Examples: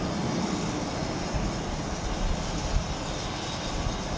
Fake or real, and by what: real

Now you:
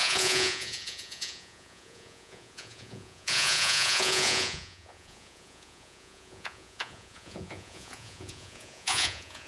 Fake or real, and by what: fake, vocoder, Vocos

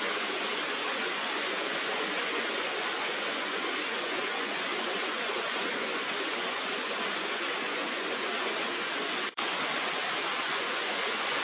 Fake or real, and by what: fake, vocoder, Vocos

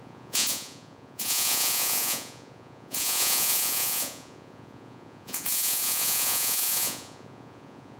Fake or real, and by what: fake, vocoder, Vocos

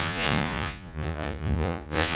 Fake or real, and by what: fake, vocoder, Vocos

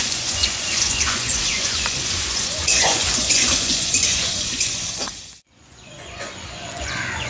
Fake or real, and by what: fake, vocoder, Vocos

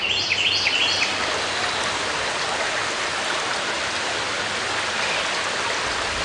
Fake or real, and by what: real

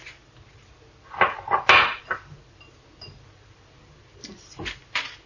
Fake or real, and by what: real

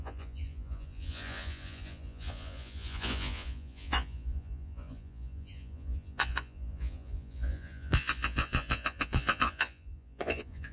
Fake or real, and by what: fake, vocoder, Vocos